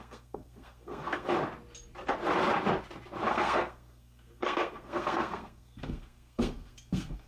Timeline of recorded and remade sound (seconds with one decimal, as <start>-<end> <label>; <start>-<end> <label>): 0.0-1.3 remade; 1.3-3.3 recorded; 3.3-7.3 remade